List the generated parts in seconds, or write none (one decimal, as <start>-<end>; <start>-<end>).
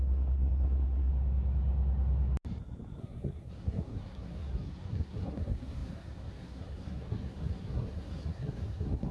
0.0-1.1; 3.0-9.1